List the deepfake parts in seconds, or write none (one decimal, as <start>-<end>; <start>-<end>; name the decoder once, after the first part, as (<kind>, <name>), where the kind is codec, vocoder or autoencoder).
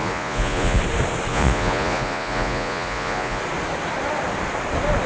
0.0-0.8 (vocoder, Vocos); 1.3-3.4